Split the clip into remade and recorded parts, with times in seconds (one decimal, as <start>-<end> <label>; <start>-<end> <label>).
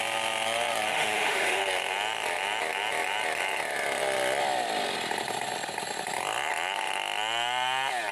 0.0-0.9 recorded; 0.9-1.6 remade; 1.6-8.1 recorded